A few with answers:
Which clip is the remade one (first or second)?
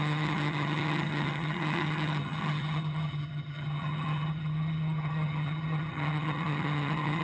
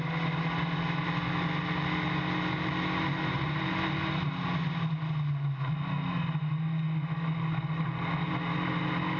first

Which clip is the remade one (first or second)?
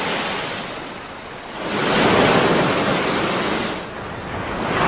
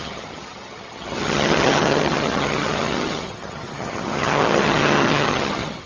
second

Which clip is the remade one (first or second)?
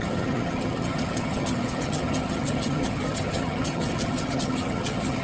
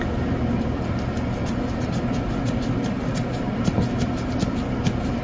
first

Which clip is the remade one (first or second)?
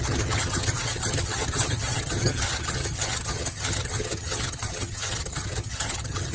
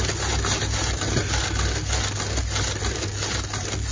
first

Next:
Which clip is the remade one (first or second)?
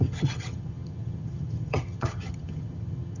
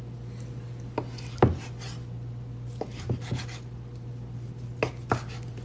first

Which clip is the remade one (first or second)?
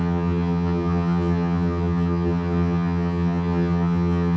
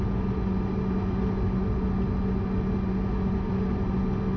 first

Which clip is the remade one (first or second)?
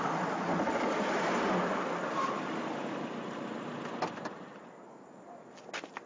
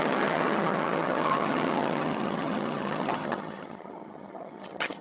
second